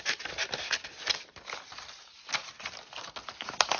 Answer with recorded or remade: recorded